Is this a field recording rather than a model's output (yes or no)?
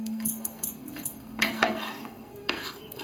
no